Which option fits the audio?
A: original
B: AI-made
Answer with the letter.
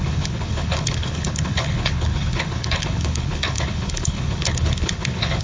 B